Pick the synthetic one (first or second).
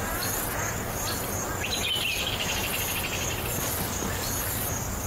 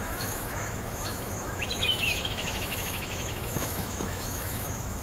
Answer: second